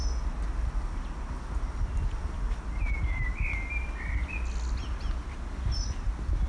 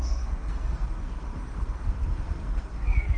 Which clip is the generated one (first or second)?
second